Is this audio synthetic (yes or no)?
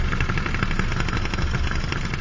no